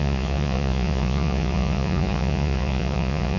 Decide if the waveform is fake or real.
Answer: fake